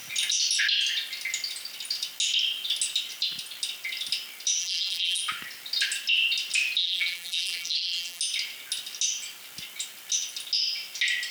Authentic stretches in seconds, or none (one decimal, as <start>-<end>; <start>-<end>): 0.0-4.6; 5.2-6.8; 8.2-11.3